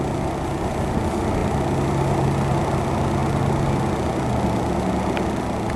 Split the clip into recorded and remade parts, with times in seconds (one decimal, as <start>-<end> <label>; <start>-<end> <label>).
0.0-5.8 recorded